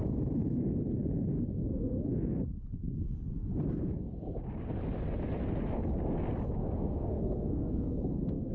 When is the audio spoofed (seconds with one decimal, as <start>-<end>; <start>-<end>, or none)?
6.6-8.5